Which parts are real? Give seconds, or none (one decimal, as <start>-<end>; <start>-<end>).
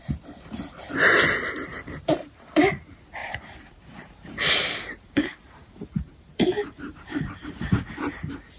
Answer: 0.0-1.7; 2.8-3.2; 7.7-8.6